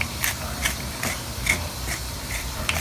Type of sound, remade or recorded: remade